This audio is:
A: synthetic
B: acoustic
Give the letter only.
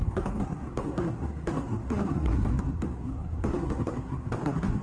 A